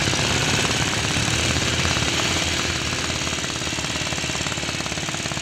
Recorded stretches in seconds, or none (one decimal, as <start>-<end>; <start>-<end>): 0.0-0.4; 2.7-5.4